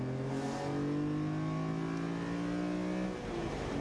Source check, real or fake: real